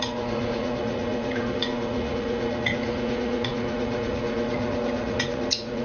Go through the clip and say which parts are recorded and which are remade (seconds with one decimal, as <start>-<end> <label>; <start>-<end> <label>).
0.0-5.8 remade